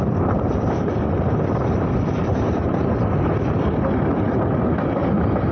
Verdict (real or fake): real